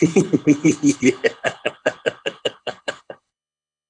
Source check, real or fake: fake